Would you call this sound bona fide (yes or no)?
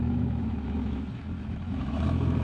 no